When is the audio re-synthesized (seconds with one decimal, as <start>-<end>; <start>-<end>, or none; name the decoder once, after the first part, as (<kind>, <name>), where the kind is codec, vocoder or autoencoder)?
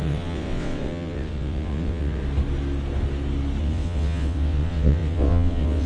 0.0-2.2 (vocoder, WaveNeXt); 3.6-5.9